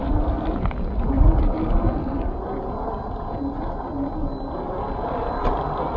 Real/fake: real